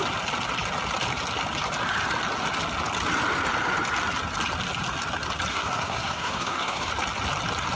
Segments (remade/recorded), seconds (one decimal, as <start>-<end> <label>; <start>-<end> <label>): 0.0-5.5 recorded; 5.5-6.9 remade; 6.9-7.8 recorded